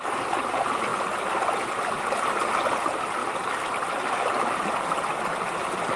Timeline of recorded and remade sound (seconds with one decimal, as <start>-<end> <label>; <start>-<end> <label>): 0.0-6.0 recorded